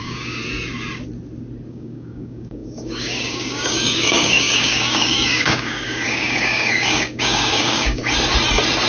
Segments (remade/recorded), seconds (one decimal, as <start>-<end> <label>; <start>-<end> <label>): 0.0-0.4 remade; 0.4-1.7 recorded; 1.7-8.0 remade; 8.0-8.9 recorded